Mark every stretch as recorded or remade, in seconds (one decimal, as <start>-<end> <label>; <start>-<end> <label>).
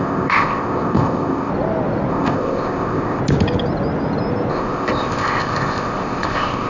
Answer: 0.0-1.5 remade; 1.5-2.1 recorded; 2.1-3.2 remade; 3.2-4.5 recorded; 4.5-6.7 remade